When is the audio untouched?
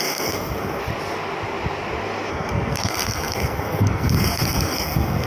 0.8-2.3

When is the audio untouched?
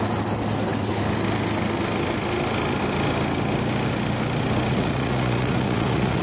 0.0-4.7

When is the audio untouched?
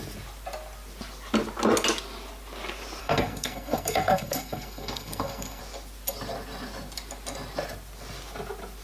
0.0-3.0; 5.6-8.8